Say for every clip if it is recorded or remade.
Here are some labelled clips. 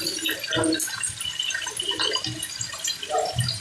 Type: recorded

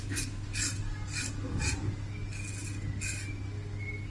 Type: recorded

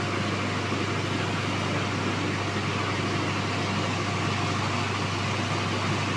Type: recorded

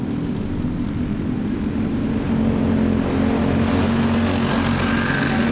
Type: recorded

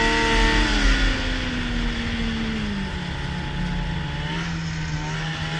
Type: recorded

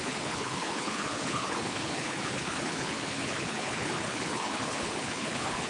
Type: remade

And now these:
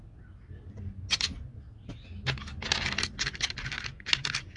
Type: recorded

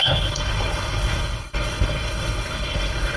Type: remade